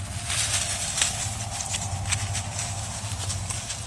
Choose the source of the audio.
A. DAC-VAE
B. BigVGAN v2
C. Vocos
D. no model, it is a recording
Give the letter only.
D